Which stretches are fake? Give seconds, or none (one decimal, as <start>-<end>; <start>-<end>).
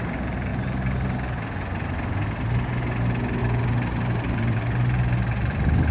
none